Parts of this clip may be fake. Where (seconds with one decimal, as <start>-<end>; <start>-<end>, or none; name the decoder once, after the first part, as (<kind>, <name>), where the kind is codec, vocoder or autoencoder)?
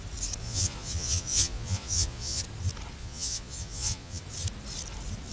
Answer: 0.4-2.4 (vocoder, Vocos); 3.0-4.2